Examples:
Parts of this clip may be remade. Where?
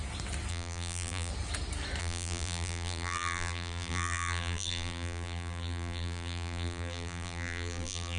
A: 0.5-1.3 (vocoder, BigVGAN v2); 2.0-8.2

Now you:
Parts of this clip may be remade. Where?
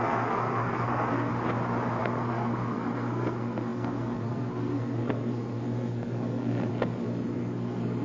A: 0.0-1.3 (codec, SNAC); 2.0-8.0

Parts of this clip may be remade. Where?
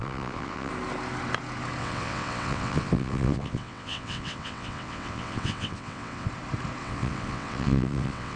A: 0.0-0.7 (vocoder, WaveNeXt); 1.8-6.3; 6.8-8.4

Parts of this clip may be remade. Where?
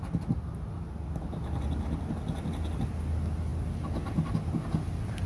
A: none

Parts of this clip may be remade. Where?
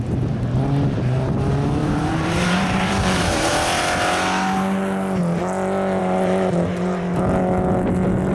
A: 1.8-3.5 (vocoder, BigVGAN v2); 6.0-7.2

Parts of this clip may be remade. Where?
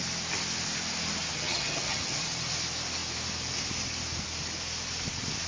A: 1.3-2.2 (vocoder, HiFi-GAN)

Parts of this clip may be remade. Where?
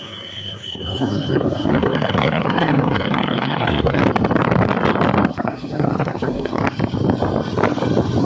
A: 0.0-4.0 (codec, SNAC); 5.3-6.6